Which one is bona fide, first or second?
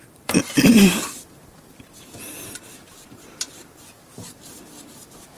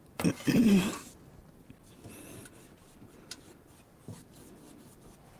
second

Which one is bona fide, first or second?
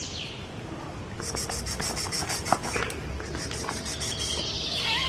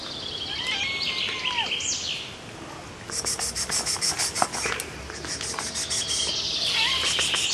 second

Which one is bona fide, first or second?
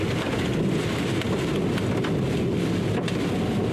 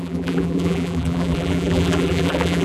first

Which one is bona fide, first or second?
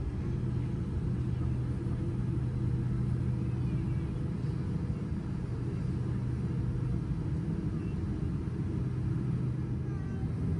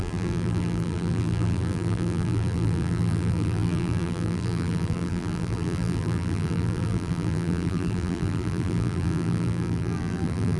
first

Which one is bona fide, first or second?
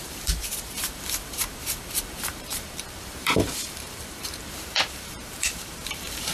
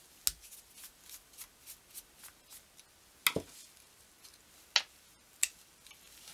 second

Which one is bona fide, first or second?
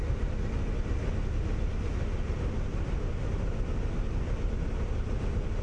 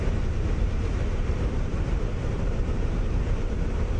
first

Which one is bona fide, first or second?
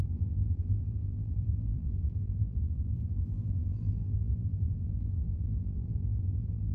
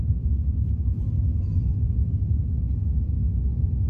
second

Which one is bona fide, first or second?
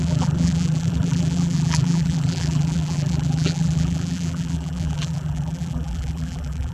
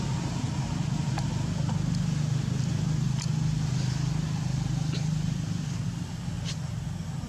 second